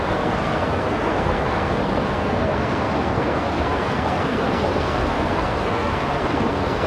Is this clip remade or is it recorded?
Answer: remade